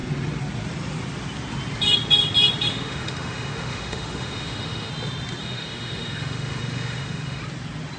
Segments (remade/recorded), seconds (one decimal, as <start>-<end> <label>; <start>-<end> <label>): 0.0-2.7 recorded; 2.7-4.9 remade; 4.9-5.4 recorded; 5.4-7.4 remade; 7.4-8.0 recorded

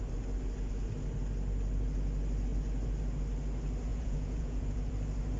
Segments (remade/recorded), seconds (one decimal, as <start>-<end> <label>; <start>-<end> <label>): 0.0-3.9 recorded; 3.9-4.9 remade; 4.9-5.4 recorded

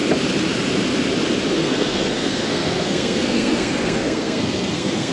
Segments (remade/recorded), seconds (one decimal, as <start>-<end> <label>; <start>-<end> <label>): 0.0-1.6 recorded; 1.6-5.1 remade

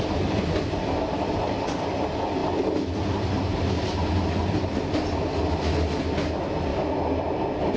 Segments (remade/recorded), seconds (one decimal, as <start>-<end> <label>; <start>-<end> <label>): 0.0-7.8 recorded